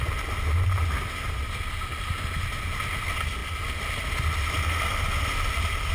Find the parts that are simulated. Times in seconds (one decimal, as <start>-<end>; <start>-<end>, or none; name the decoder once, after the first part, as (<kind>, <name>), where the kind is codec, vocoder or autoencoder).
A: none